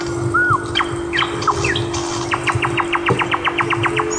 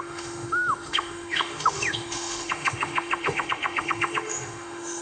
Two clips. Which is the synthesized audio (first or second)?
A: second